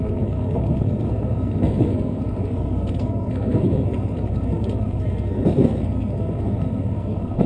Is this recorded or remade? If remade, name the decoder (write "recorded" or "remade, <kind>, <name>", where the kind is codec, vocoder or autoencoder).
remade, codec, SNAC